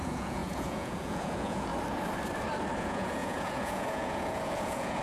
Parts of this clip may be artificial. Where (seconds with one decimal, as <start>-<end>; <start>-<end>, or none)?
0.0-1.7; 2.8-5.0